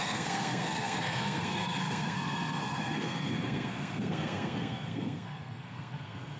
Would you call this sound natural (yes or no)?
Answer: no